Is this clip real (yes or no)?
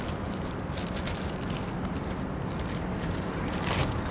yes